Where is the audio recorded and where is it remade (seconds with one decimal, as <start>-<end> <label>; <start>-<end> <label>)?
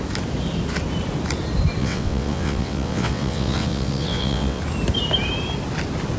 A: 0.0-1.8 recorded; 1.8-4.6 remade; 4.6-6.2 recorded